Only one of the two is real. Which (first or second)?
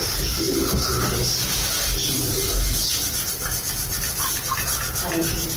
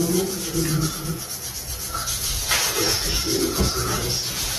first